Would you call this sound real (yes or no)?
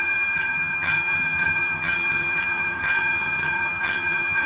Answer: no